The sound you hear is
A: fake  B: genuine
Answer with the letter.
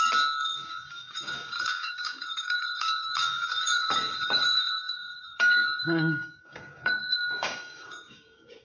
A